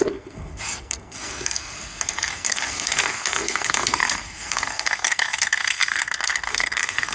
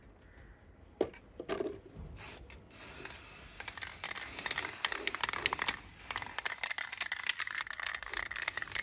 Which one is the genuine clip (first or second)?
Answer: second